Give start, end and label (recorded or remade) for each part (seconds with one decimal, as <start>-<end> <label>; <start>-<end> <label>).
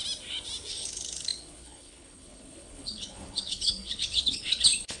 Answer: 0.0-0.7 recorded; 0.7-5.0 remade